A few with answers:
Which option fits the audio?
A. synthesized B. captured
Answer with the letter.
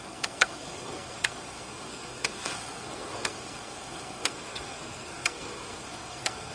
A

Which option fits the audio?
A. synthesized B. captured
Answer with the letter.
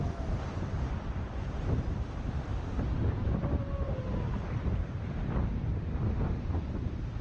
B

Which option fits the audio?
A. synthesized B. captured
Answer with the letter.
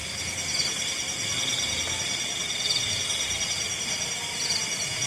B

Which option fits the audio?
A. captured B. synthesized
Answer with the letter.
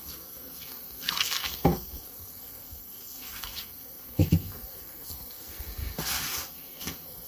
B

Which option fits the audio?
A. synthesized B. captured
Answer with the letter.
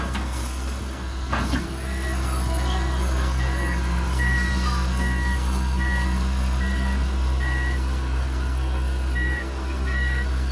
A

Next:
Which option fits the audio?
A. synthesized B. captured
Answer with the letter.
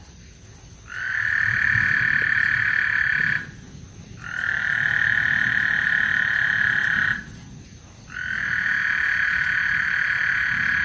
B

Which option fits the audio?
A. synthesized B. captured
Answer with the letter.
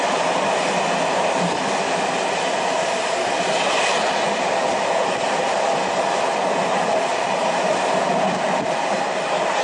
B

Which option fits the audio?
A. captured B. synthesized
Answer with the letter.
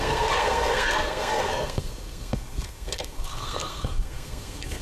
B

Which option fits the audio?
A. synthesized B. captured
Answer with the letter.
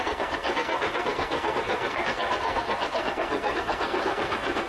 A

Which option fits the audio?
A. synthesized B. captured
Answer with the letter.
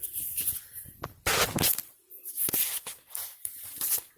B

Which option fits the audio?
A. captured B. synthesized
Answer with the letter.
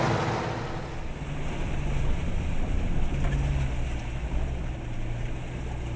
A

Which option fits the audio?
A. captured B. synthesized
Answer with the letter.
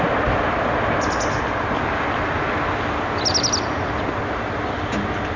A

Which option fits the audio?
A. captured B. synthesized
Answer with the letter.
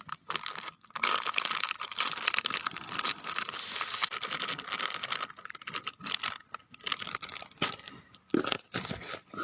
A